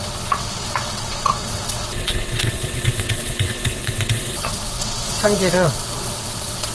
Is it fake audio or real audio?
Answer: fake